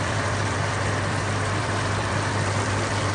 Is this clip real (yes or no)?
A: no